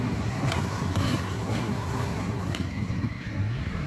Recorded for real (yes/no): no